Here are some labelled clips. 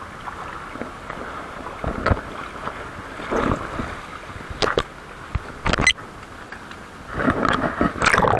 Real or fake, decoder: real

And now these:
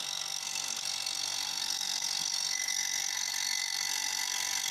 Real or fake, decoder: fake, codec, SNAC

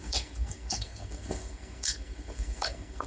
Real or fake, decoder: fake, codec, SNAC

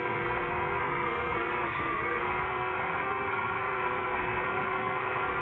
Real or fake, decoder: fake, codec, SNAC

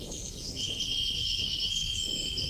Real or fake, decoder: fake, codec, SNAC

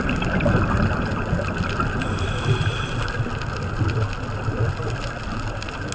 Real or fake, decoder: real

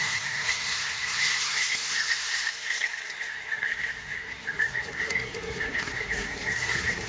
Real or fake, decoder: fake, codec, SNAC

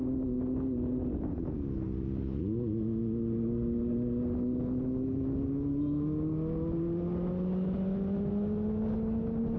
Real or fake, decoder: real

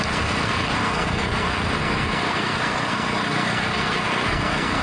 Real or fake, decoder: fake, codec, SNAC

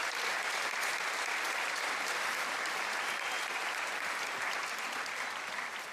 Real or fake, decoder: real